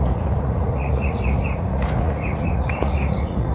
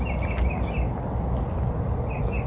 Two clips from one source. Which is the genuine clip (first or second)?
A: second